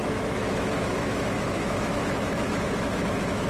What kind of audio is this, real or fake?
fake